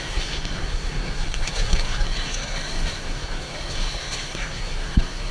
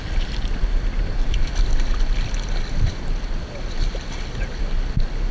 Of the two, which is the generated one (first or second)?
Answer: first